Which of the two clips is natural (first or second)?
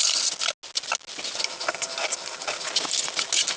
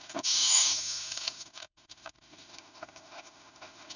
first